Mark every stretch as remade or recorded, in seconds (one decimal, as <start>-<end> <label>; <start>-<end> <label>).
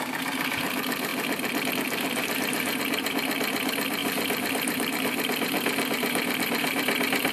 0.0-4.0 recorded; 4.0-7.3 remade